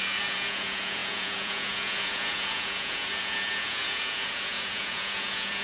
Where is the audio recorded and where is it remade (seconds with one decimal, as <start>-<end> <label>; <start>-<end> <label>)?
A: 0.0-5.6 remade